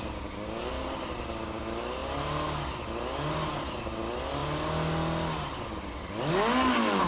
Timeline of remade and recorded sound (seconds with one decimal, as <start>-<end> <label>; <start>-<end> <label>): 0.0-7.1 recorded